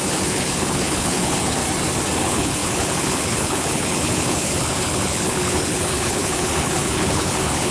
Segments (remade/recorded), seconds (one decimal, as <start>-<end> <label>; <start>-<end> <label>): 0.0-1.6 remade; 1.6-2.2 recorded; 2.2-7.7 remade